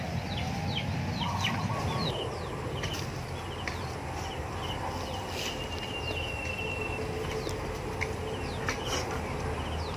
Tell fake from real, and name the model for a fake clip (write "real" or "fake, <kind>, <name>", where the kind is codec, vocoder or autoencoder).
real